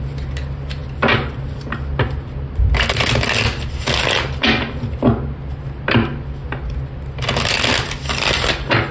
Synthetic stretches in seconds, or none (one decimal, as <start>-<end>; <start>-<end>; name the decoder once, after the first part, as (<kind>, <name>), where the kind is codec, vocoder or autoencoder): none